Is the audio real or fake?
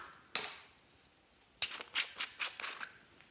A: real